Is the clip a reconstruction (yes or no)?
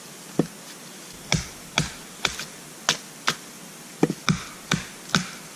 no